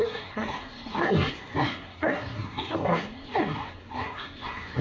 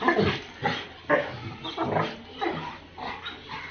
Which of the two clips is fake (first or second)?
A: first